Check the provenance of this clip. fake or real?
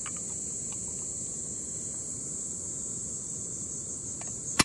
real